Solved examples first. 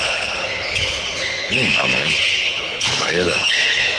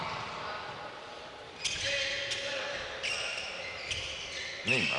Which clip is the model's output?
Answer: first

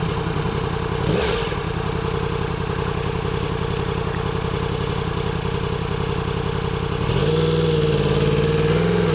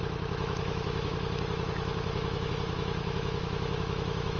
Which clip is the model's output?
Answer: second